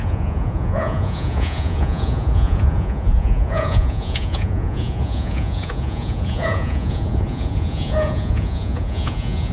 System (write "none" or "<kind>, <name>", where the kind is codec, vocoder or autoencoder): vocoder, Vocos